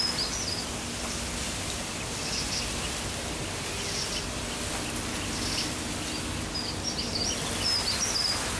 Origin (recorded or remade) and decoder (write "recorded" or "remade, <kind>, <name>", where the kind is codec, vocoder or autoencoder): recorded